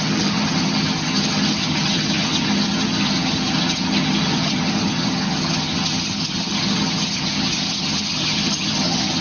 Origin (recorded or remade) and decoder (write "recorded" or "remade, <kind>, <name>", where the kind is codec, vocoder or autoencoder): remade, vocoder, HiFi-GAN